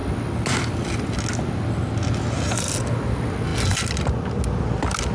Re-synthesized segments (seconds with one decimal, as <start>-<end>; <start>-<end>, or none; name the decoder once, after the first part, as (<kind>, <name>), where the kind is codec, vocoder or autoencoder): none